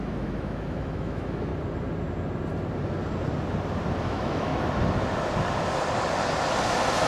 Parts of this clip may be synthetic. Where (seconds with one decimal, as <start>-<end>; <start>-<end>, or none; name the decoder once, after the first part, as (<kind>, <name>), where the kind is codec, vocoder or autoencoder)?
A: 0.0-1.5 (autoencoder, DAC-VAE); 4.0-4.5